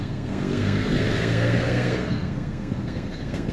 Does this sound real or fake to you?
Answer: fake